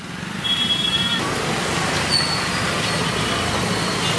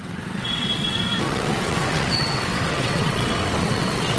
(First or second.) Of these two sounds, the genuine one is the first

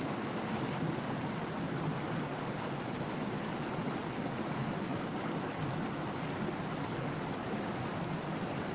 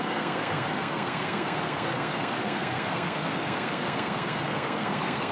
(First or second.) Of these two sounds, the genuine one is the first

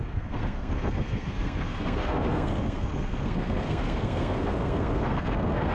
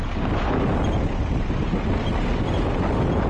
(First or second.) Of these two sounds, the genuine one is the second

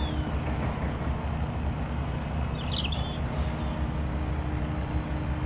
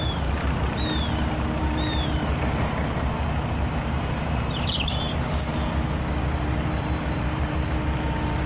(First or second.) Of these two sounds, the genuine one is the first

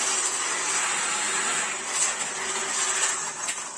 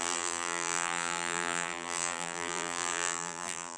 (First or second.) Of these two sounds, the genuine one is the first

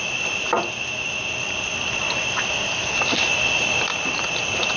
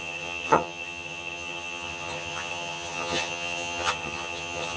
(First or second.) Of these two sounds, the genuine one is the first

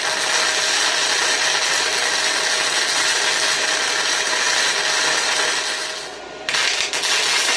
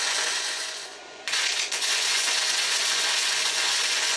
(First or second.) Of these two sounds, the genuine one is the first